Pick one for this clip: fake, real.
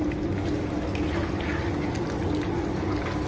real